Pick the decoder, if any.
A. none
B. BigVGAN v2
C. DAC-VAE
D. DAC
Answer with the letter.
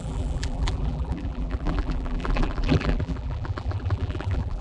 B